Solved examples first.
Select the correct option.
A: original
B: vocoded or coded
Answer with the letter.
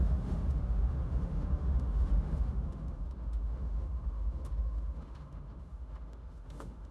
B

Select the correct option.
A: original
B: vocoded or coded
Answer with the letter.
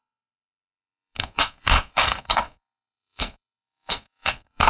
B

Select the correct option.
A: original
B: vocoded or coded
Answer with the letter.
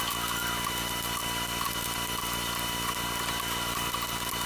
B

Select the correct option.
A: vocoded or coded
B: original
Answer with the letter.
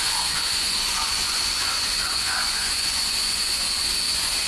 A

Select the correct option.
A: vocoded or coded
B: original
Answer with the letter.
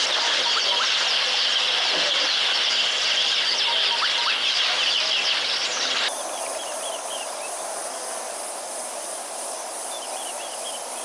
B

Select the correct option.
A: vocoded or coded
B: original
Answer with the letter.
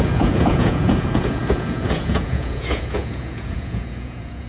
A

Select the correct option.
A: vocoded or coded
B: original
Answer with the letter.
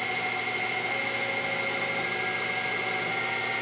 B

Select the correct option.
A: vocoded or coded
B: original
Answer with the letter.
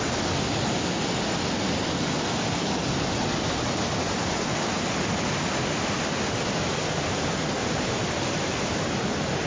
B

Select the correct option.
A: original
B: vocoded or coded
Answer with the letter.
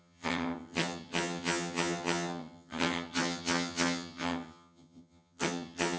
B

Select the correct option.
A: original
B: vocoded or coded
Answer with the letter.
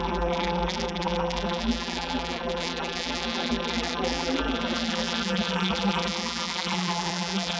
B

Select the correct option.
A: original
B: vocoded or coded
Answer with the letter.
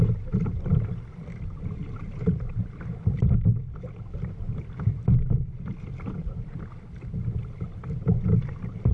A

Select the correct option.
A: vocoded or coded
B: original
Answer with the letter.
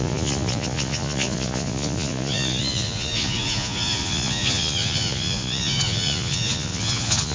A